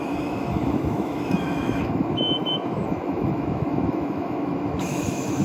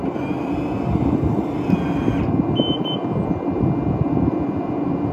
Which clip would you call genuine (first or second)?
second